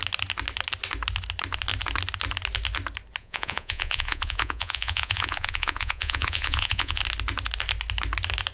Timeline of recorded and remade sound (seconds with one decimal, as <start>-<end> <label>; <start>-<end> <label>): 0.0-3.2 recorded; 3.2-7.0 remade; 7.0-8.5 recorded